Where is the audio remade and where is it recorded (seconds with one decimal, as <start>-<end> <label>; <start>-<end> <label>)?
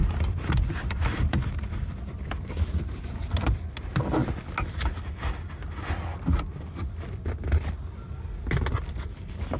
0.0-1.5 remade; 1.5-9.6 recorded